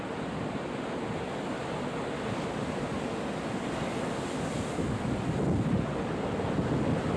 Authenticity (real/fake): real